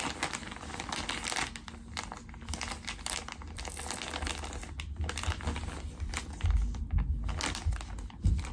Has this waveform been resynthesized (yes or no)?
no